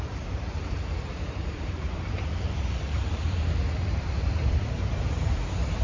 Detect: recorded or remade remade